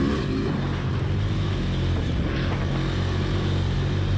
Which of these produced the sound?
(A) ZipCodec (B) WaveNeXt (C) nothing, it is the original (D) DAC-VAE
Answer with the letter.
C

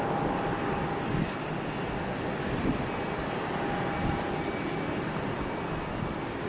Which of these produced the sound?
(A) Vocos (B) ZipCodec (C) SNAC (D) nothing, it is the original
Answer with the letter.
D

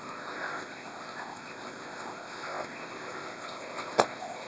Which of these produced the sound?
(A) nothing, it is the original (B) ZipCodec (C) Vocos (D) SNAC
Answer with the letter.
B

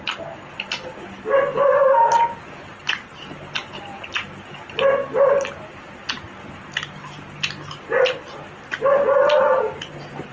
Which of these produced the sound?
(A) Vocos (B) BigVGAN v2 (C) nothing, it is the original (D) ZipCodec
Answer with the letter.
C